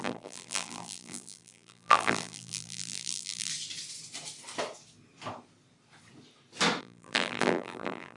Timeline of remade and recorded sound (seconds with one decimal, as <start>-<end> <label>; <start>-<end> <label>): 0.0-3.5 remade; 3.5-6.8 recorded; 6.8-8.2 remade